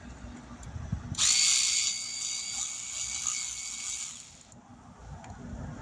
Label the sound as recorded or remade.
recorded